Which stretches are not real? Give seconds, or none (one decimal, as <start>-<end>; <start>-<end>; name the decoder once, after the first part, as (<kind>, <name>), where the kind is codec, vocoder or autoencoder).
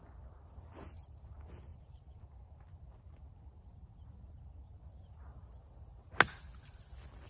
1.7-2.6 (vocoder, BigVGAN v2)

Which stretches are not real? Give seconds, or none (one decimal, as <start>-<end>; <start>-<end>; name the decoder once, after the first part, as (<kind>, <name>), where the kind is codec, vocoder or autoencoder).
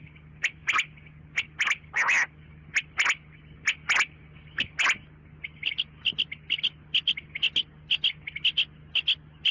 none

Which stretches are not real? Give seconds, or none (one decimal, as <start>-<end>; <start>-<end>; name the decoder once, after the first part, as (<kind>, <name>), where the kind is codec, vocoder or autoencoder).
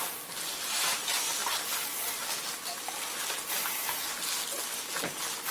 1.4-2.3 (vocoder, BigVGAN v2); 3.8-4.4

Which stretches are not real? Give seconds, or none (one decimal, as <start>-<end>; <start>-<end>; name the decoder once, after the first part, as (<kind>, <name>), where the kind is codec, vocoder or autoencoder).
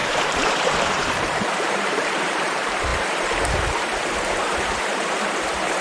0.0-5.8 (vocoder, BigVGAN v2)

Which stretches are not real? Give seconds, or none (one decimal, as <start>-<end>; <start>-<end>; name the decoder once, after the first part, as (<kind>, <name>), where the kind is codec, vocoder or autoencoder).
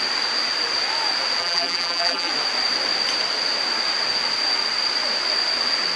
1.4-2.3 (vocoder, BigVGAN v2)